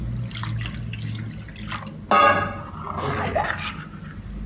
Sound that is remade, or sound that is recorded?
recorded